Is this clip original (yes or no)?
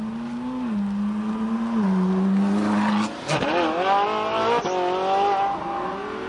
yes